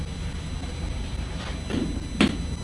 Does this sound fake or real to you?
real